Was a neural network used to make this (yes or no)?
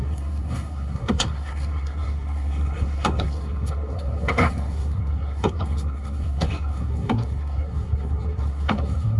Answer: yes